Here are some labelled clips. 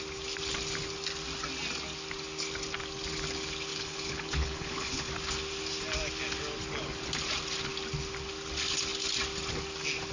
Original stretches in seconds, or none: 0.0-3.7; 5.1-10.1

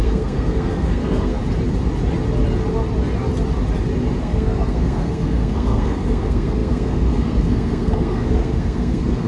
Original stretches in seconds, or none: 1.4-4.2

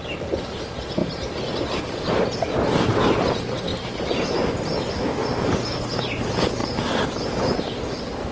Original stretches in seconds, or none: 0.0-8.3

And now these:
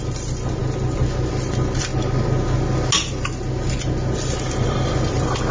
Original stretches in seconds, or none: 0.6-1.5; 1.9-4.5